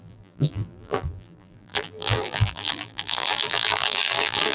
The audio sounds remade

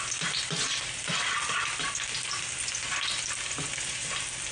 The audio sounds recorded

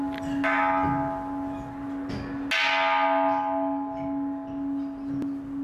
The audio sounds recorded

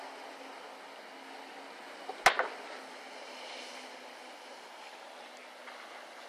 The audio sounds recorded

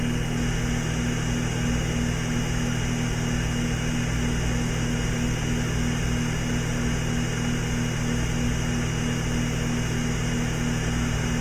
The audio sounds remade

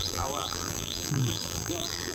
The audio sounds remade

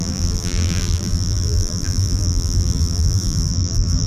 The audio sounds remade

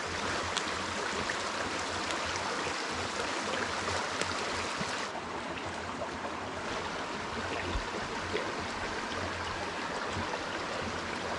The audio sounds recorded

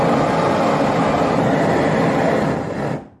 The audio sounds recorded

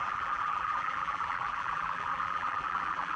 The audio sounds remade